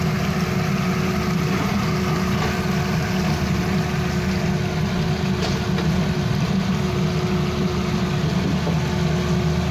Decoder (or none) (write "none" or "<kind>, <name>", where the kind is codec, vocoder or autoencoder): none